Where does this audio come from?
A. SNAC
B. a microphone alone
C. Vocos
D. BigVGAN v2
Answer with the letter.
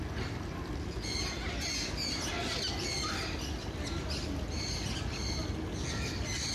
B